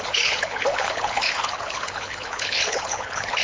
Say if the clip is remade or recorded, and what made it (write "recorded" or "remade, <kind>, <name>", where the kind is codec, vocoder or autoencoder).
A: remade, codec, HILCodec